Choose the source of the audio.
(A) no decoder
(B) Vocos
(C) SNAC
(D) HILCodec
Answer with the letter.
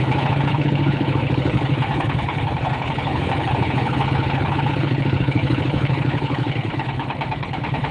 D